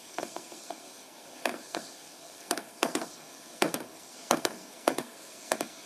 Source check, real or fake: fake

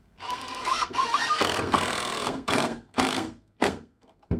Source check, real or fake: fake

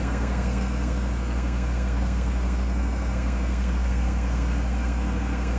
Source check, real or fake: fake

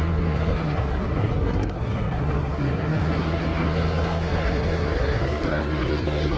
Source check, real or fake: fake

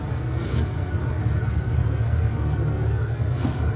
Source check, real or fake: fake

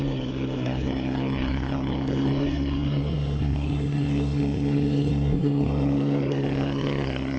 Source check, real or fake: fake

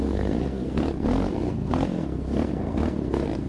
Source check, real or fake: fake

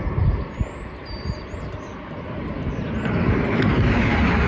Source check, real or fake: real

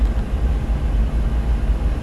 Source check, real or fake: real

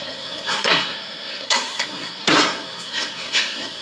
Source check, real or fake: fake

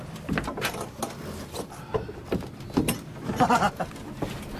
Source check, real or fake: real